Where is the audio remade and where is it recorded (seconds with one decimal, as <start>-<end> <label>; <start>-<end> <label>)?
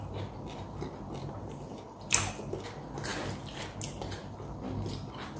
0.0-1.2 recorded; 1.2-1.8 remade; 1.8-5.4 recorded